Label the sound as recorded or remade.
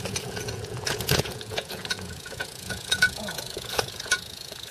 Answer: remade